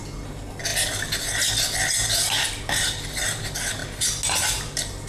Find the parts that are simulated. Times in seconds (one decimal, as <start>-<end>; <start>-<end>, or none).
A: none